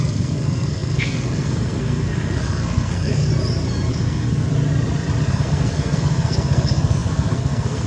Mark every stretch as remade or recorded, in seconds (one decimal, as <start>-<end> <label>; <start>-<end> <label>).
0.0-3.3 remade; 3.3-3.9 recorded; 3.9-4.5 remade; 4.5-5.3 recorded; 5.3-7.9 remade